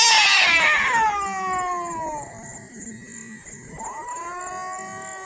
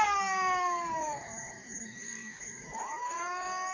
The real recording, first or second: first